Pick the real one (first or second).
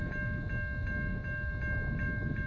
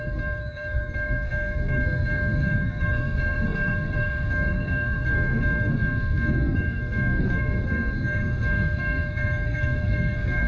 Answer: first